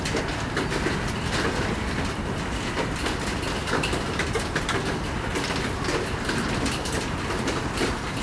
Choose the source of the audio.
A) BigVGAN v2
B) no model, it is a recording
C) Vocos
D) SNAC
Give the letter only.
B